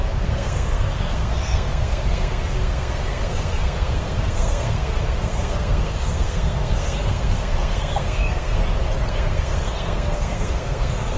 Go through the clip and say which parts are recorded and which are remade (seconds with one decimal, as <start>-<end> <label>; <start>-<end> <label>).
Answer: 0.0-8.6 remade; 8.6-9.1 recorded; 9.1-11.2 remade